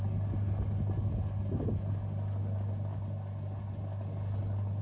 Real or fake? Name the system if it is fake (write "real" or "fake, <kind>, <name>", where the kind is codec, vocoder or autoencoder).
real